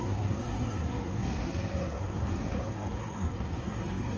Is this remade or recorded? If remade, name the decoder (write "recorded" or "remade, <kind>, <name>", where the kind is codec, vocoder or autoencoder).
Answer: remade, codec, SNAC